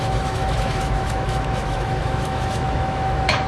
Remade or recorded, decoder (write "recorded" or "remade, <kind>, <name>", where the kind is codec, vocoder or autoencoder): remade, autoencoder, DAC-VAE